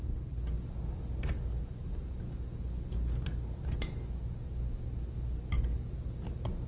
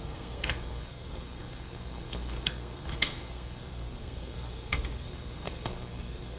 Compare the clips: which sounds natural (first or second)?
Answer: first